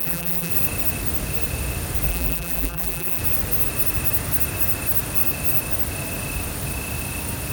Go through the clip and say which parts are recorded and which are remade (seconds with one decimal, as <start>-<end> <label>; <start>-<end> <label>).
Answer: 0.0-0.5 remade; 0.5-2.1 recorded; 2.1-3.2 remade; 3.2-7.5 recorded